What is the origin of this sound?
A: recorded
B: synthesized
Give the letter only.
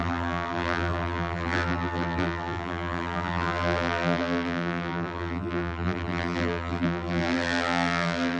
B